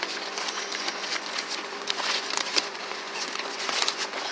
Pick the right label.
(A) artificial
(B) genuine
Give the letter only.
A